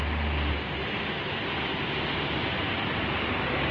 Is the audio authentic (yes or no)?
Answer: yes